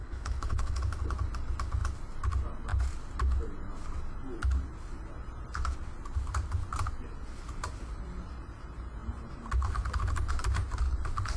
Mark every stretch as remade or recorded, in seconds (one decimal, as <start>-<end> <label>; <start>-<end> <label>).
0.0-0.8 remade; 0.8-11.4 recorded